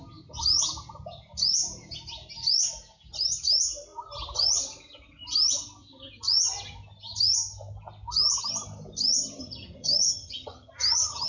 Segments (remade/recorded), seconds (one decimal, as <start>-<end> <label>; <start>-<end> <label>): 0.0-9.4 recorded; 9.4-11.3 remade